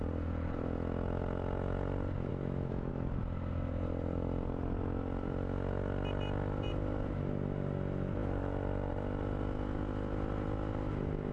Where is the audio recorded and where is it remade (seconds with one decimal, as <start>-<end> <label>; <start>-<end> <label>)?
0.0-2.3 recorded; 2.3-2.9 remade; 2.9-11.3 recorded